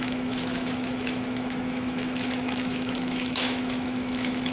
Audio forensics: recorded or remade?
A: remade